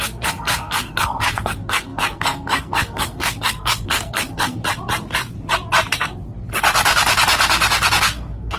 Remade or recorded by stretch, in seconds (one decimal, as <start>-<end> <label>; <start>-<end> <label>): 0.0-4.6 remade; 4.6-8.0 recorded; 8.0-8.6 remade